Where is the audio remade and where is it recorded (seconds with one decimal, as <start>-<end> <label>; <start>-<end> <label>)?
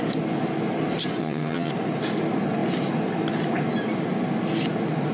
0.0-1.2 recorded; 1.2-1.7 remade; 1.7-5.1 recorded